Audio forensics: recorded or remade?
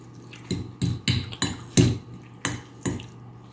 recorded